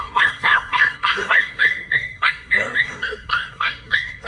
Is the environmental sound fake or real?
fake